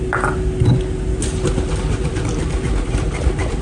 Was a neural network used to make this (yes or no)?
no